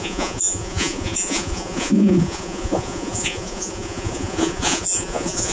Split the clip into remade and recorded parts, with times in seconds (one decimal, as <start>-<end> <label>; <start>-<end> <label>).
0.0-5.5 remade